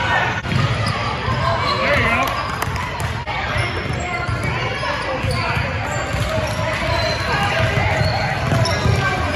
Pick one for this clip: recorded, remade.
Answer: recorded